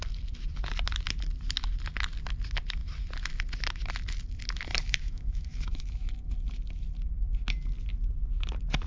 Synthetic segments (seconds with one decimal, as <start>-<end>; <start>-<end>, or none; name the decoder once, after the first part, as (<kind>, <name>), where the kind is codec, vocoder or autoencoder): 4.8-6.0 (autoencoder, DAC-VAE)